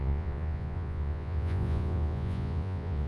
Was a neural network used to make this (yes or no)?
yes